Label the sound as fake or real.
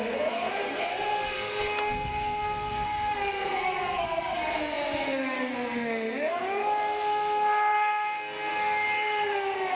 fake